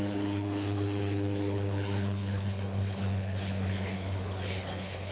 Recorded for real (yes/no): no